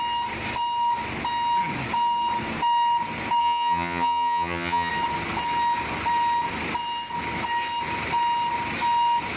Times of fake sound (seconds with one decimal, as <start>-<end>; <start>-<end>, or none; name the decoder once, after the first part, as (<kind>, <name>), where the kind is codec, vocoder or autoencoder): 3.4-4.9 (vocoder, HiFi-GAN)